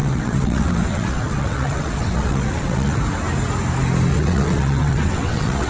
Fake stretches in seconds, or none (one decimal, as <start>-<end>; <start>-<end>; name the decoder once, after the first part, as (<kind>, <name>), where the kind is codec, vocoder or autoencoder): 0.0-3.0 (vocoder, WaveNeXt); 4.1-5.7